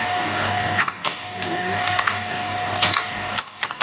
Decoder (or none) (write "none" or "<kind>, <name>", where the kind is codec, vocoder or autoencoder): codec, DAC